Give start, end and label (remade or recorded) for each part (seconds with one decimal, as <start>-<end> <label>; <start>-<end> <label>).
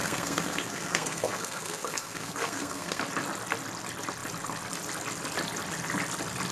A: 0.0-3.0 remade; 3.0-6.5 recorded